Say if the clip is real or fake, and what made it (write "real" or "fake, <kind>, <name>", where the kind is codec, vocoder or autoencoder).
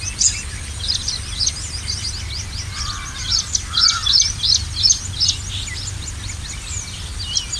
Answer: real